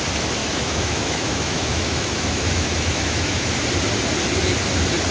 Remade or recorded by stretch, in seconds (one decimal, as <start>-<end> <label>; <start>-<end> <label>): 0.0-0.4 recorded; 0.4-3.5 remade; 3.5-5.1 recorded